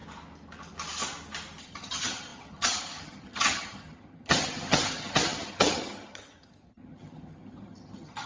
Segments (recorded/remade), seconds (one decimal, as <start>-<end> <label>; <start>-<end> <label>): 0.0-1.6 recorded; 1.6-8.3 remade

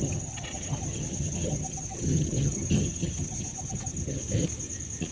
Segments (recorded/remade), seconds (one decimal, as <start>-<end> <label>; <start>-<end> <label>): 0.0-4.2 remade; 4.2-5.1 recorded

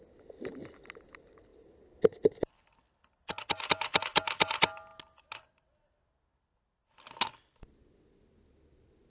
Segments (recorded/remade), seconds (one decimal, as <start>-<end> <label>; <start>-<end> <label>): 0.0-9.1 recorded